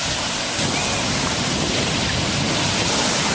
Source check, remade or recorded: recorded